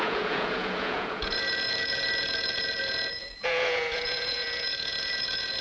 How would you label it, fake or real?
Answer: fake